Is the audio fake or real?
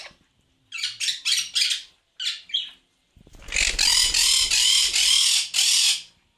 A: real